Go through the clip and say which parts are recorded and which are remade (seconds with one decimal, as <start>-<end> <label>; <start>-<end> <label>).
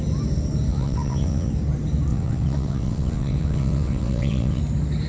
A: 0.0-0.7 recorded; 0.7-1.5 remade; 1.5-2.1 recorded; 2.1-4.6 remade; 4.6-5.1 recorded